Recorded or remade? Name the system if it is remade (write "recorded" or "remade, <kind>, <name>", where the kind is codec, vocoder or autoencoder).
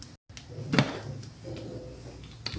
recorded